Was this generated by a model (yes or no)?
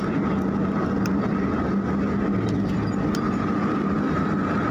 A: no